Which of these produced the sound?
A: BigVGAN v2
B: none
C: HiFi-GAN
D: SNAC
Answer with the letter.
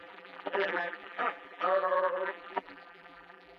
A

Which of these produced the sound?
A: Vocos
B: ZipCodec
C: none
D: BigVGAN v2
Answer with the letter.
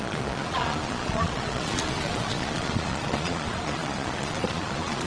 A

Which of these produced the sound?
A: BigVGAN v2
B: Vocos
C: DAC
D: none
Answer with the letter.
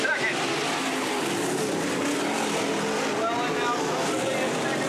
D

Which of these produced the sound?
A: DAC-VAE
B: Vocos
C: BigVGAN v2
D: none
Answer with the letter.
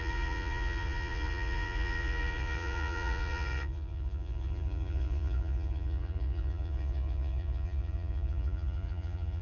B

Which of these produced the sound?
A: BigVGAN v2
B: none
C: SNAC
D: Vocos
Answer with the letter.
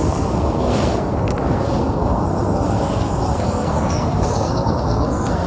C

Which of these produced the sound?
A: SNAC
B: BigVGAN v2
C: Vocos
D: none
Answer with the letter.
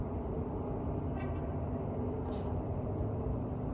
D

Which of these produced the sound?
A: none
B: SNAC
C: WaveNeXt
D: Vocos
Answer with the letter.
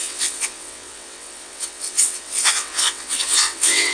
C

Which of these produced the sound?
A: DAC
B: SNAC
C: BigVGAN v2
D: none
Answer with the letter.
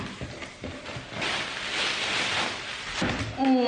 D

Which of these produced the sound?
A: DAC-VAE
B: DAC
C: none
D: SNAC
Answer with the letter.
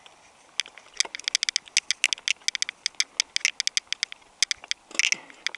C